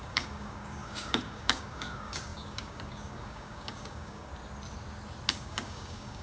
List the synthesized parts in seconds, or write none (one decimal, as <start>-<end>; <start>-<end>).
0.0-4.3; 5.3-6.2